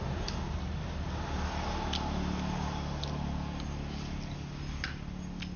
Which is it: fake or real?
real